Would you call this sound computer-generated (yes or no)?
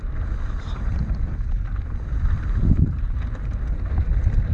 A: no